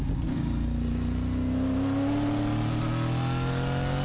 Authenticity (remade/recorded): recorded